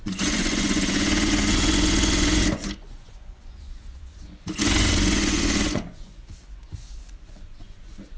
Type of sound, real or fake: fake